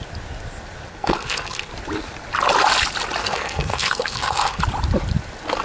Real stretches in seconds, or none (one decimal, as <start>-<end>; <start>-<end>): 0.0-0.9; 1.7-3.2; 4.6-5.6